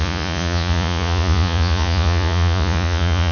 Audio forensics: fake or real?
fake